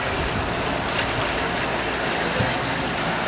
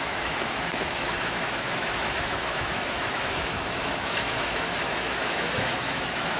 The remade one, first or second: second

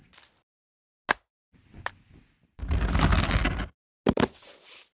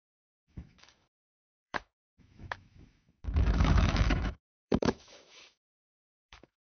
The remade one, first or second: second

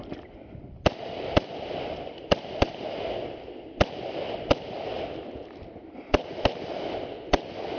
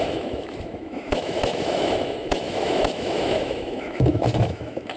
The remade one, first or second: second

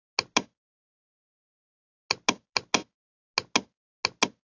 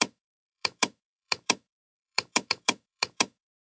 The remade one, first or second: second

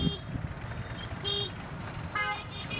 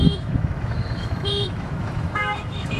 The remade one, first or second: second